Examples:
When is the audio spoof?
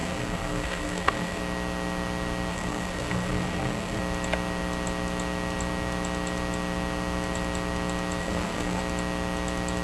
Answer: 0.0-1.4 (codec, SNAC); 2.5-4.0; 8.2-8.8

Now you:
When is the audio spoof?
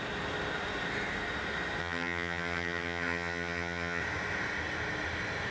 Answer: 1.8-4.0 (vocoder, HiFi-GAN)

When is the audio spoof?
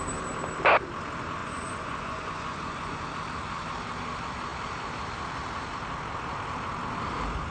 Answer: 1.4-3.0 (vocoder, Vocos)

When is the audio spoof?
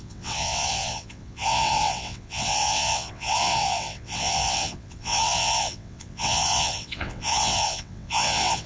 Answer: 0.0-8.7 (vocoder, WaveNeXt)